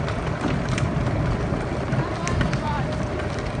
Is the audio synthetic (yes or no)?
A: no